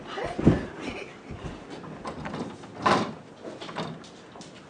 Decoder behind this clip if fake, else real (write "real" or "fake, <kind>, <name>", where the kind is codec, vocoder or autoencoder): real